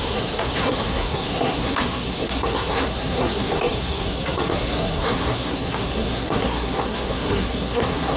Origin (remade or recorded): remade